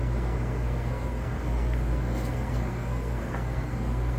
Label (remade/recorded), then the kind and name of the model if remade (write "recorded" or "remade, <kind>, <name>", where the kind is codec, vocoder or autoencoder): remade, codec, SNAC